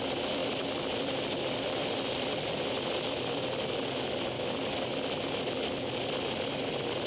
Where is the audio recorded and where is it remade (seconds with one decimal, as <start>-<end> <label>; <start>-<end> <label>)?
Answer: 0.0-7.1 recorded